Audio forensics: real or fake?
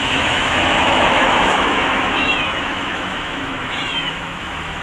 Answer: fake